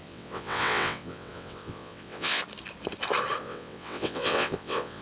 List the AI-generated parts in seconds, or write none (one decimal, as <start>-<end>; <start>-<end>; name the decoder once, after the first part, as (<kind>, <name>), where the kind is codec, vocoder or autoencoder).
0.0-2.4 (vocoder, WaveNeXt); 3.4-5.0